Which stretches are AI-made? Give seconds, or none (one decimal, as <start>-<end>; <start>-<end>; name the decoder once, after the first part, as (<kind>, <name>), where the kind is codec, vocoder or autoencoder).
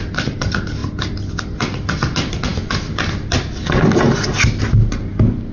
none